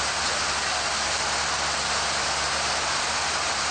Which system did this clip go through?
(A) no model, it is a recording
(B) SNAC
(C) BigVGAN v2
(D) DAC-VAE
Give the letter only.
A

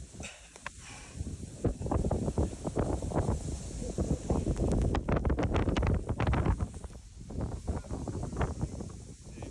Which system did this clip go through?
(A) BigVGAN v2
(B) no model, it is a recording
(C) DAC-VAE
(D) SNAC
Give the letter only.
B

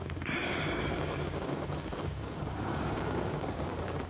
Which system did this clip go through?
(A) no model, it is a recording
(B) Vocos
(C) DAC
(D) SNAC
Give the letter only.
C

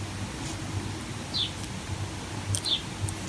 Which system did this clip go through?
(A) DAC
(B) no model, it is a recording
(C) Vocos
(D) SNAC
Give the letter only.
B